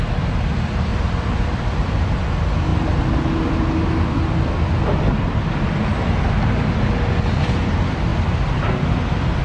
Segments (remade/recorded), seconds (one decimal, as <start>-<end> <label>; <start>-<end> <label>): 0.0-0.9 recorded; 0.9-2.2 remade; 2.2-8.1 recorded; 8.1-9.4 remade